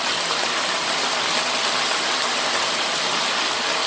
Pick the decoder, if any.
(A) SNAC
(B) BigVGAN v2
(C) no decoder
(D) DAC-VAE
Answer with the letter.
C